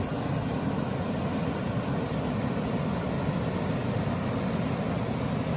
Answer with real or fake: fake